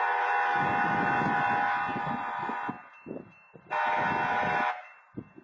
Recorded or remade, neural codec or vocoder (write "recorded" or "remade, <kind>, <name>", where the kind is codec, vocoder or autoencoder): recorded